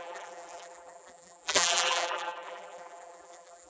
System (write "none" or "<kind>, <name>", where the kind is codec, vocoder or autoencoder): vocoder, BigVGAN v2